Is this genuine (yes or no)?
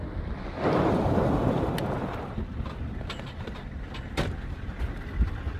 yes